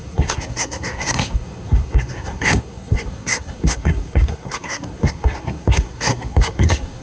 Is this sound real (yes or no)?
no